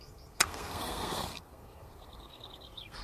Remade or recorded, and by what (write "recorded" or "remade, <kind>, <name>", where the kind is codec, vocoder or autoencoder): remade, codec, SNAC